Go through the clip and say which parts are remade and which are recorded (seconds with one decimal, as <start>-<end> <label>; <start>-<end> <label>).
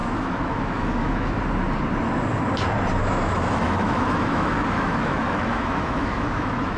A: 0.0-1.4 remade; 1.4-3.0 recorded; 3.0-6.8 remade